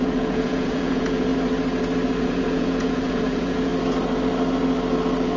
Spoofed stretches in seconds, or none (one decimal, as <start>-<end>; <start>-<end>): 0.0-1.3; 2.2-3.7